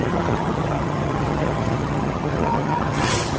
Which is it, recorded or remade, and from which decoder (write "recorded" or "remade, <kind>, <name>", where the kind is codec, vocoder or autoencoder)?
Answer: remade, vocoder, HiFi-GAN